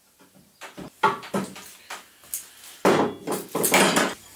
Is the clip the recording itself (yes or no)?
yes